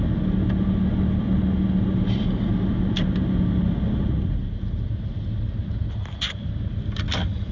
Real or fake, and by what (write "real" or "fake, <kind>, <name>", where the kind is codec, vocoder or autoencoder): real